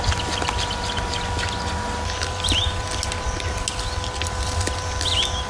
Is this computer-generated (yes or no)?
no